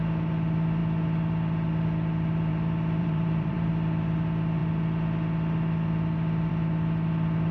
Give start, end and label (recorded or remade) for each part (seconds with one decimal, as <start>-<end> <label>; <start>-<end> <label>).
0.0-3.0 recorded; 3.0-3.7 remade; 3.7-7.5 recorded

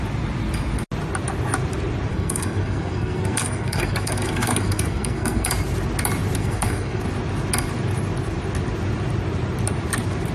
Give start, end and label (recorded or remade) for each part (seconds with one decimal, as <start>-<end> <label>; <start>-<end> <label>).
0.0-2.1 recorded; 2.1-5.5 remade; 5.5-6.4 recorded; 6.4-7.0 remade; 7.0-10.3 recorded

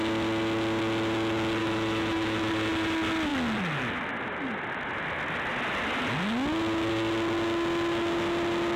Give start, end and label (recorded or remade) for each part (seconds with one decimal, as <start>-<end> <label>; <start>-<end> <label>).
0.0-1.6 recorded; 1.6-2.5 remade; 2.5-8.8 recorded

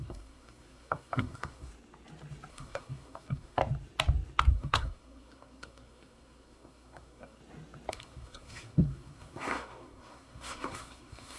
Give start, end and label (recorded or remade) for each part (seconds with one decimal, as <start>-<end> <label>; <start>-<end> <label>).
0.0-1.7 remade; 1.7-2.5 recorded; 2.5-3.6 remade; 3.6-4.5 recorded; 4.5-7.4 remade; 7.4-7.9 recorded; 7.9-11.4 remade

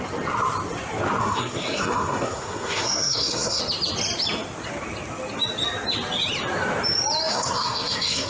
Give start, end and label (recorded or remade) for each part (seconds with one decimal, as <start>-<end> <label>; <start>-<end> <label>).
0.0-1.2 recorded; 1.2-3.6 remade; 3.6-7.3 recorded; 7.3-8.3 remade

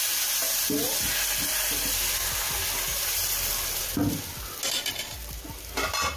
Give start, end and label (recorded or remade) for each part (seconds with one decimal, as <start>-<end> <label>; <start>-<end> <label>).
0.0-6.2 recorded

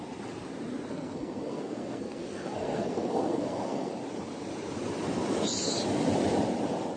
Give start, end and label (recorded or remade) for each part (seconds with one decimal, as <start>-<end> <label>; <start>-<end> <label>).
0.0-0.9 recorded; 0.9-3.9 remade; 3.9-7.0 recorded